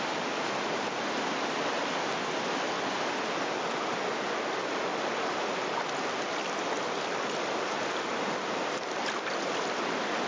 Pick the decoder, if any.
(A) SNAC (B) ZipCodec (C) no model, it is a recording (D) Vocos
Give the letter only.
C